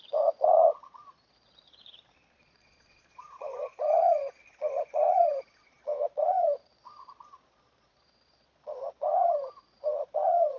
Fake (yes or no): yes